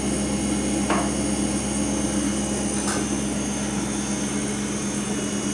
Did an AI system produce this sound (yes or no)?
no